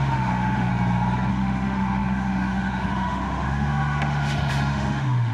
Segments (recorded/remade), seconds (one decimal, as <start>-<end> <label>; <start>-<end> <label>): 0.0-0.7 remade; 0.7-1.3 recorded; 1.3-5.3 remade